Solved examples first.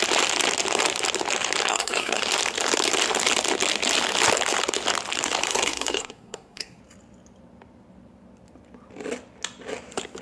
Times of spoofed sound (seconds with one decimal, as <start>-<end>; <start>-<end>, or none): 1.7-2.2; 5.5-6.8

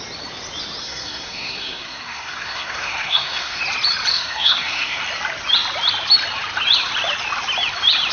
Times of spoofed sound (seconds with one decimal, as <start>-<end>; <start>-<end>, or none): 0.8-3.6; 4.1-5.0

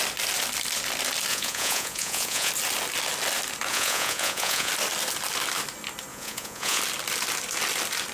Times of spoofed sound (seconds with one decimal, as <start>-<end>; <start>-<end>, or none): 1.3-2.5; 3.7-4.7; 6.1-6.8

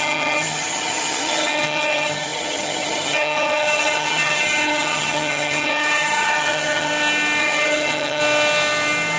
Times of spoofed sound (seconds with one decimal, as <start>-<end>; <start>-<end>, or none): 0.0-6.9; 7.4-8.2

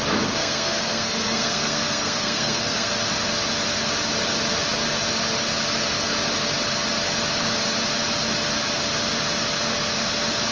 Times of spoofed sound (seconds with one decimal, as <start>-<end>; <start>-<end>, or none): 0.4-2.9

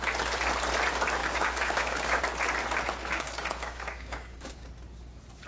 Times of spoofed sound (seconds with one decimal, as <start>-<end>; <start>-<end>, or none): 1.2-2.2; 3.0-4.7

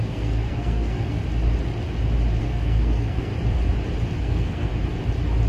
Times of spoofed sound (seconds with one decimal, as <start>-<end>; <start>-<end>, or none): 0.0-1.2; 2.4-3.3; 4.2-4.7